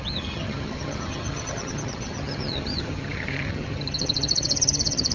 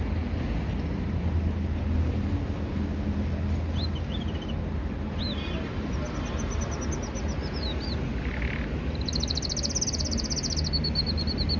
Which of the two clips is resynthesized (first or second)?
first